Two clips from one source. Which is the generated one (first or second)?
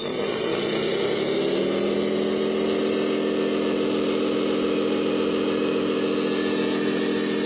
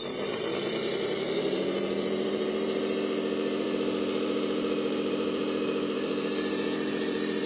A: second